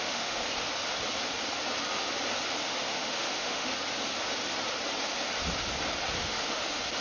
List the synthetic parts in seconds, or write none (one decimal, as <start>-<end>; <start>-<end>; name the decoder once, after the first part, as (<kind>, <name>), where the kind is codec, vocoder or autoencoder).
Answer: 0.0-0.4 (autoencoder, DAC-VAE); 2.6-3.7; 6.2-7.0